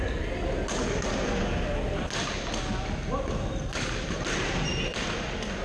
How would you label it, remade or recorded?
recorded